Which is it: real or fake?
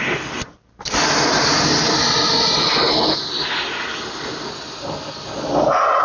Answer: real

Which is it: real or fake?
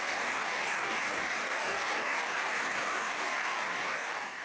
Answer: fake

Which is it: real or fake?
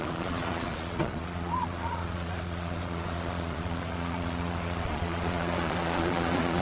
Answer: fake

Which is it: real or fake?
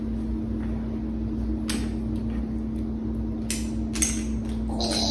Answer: real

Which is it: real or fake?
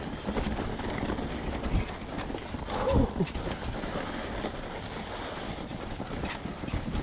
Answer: real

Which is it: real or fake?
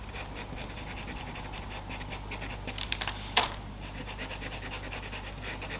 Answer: real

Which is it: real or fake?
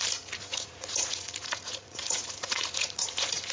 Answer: fake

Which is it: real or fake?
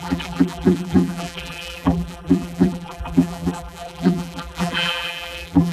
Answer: fake